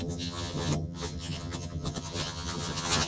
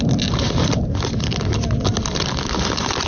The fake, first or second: first